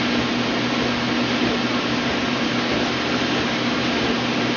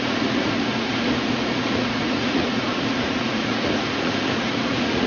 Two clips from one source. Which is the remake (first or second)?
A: second